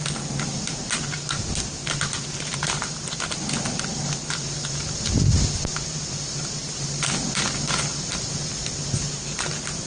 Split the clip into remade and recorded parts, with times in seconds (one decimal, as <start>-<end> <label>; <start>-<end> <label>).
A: 0.0-9.9 recorded